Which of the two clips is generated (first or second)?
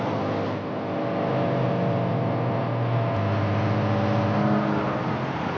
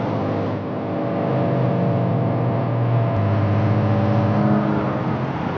first